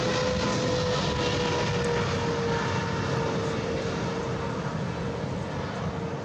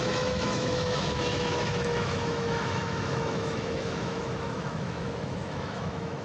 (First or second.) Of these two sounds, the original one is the first